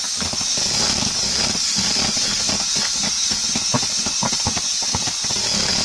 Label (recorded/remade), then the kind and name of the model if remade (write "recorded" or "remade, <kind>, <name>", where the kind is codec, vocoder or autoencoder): recorded